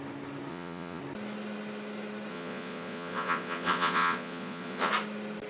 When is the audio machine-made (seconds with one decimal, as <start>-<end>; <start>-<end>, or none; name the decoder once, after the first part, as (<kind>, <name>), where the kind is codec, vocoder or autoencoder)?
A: 0.5-1.0 (vocoder, Vocos); 2.3-4.9